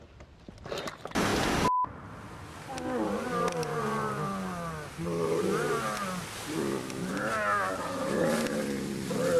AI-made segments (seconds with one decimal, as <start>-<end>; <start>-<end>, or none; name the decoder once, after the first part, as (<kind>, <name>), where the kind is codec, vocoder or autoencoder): none